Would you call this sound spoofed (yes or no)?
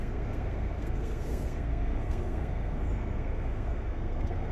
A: yes